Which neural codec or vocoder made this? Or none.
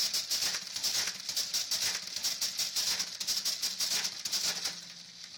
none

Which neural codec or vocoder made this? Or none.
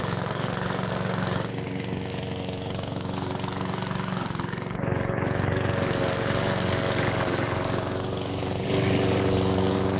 codec, DAC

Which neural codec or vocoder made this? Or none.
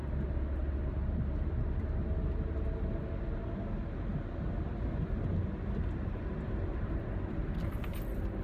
none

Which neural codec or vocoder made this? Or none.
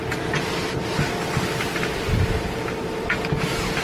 none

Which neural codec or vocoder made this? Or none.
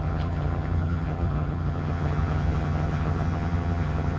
vocoder, HiFi-GAN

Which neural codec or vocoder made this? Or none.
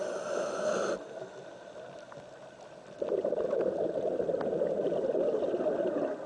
none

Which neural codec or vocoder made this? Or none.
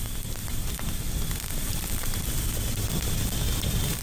none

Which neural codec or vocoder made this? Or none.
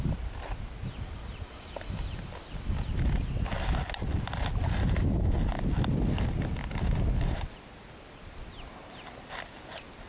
none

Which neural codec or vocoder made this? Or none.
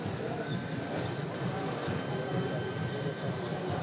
none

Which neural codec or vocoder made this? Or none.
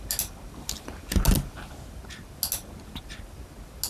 none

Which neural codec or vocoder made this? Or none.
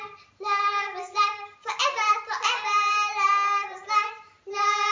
none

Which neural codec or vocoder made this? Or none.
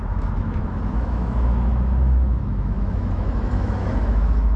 autoencoder, DAC-VAE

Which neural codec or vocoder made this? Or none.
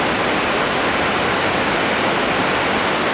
none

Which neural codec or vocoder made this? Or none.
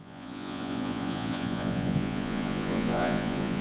vocoder, Vocos